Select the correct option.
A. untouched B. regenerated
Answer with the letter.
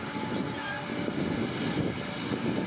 A